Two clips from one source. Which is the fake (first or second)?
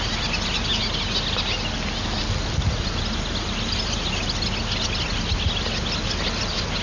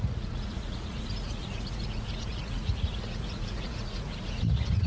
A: second